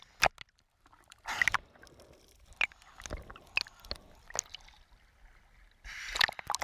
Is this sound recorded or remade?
recorded